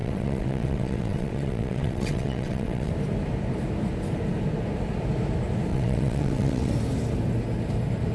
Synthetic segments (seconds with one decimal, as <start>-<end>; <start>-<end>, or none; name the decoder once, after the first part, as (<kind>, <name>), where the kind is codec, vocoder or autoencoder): 0.0-2.9 (vocoder, WaveNeXt); 5.7-6.7